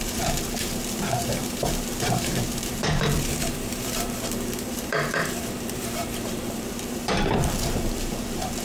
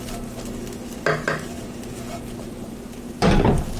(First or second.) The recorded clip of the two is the second